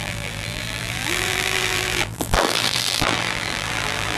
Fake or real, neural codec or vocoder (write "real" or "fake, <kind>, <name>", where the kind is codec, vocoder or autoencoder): fake, vocoder, BigVGAN v2